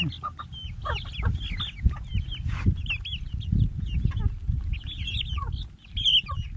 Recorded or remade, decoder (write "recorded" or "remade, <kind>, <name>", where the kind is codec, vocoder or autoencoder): recorded